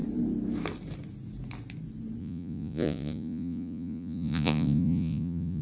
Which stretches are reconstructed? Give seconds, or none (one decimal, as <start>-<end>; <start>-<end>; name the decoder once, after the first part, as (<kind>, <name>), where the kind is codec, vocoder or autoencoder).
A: 2.2-5.6 (vocoder, Vocos)

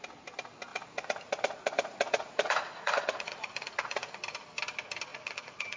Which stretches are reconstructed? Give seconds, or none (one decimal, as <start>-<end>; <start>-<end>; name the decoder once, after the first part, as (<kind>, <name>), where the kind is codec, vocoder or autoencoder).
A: 0.7-4.2 (vocoder, Vocos); 5.1-5.8